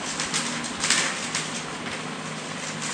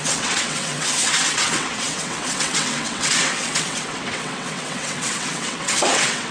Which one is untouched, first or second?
first